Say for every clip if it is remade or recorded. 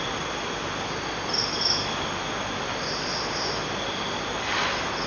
recorded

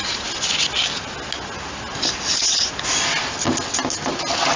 recorded